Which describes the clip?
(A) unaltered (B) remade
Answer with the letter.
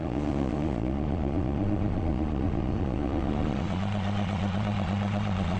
B